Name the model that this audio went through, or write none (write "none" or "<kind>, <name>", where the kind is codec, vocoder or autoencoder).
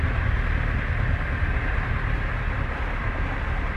none